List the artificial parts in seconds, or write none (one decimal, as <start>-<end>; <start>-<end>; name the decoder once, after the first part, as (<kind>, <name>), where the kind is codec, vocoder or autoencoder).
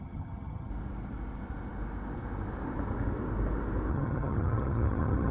0.0-0.7 (vocoder, HiFi-GAN); 3.9-5.3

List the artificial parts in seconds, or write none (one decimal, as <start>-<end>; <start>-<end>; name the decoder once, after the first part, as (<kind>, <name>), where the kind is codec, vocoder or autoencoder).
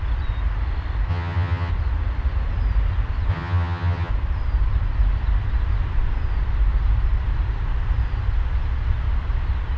1.1-1.7 (vocoder, HiFi-GAN); 3.3-4.1